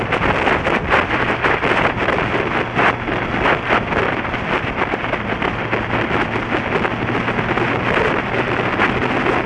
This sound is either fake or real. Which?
real